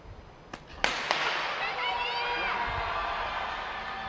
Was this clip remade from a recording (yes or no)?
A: no